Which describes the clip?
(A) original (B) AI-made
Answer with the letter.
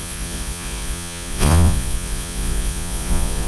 B